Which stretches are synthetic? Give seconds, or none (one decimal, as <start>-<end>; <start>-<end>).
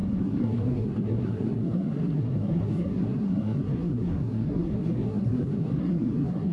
0.0-6.5